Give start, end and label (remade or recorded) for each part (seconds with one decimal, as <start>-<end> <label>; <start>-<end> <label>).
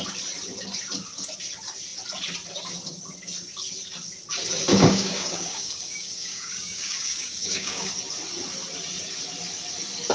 0.0-4.7 recorded; 4.7-7.9 remade; 7.9-10.1 recorded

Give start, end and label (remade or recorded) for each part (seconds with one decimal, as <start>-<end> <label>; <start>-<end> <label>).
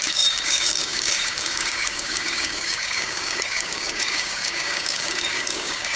0.0-6.0 remade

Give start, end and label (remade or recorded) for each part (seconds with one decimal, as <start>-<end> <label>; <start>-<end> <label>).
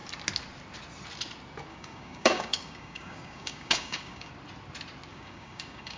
0.0-1.7 recorded; 1.7-4.3 remade; 4.3-5.1 recorded; 5.1-6.0 remade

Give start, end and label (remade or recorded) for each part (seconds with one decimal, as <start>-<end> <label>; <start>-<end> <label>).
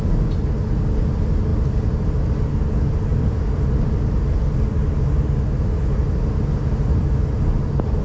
0.0-8.0 recorded